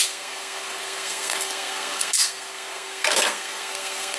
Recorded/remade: remade